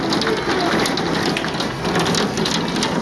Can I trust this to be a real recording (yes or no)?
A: yes